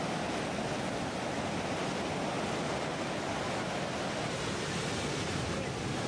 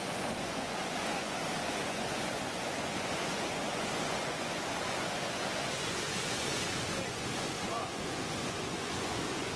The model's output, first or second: second